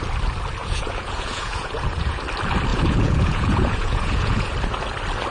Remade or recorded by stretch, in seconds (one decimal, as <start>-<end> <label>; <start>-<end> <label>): 0.0-0.6 recorded; 0.6-2.2 remade; 2.2-2.7 recorded; 2.7-4.5 remade; 4.5-5.3 recorded